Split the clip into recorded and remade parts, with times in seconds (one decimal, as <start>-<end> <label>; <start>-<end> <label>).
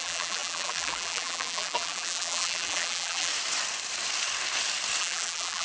0.0-3.3 remade; 3.3-5.0 recorded; 5.0-5.6 remade